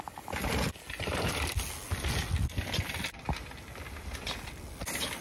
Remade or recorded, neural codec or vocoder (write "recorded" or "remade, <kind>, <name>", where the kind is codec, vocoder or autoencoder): recorded